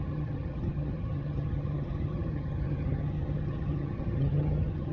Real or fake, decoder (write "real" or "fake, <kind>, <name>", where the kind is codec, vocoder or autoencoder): fake, vocoder, HiFi-GAN